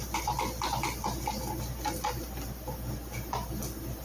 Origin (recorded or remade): recorded